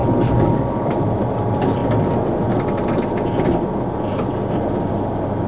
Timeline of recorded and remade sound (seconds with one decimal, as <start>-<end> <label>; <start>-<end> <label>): 0.0-0.9 remade; 0.9-5.5 recorded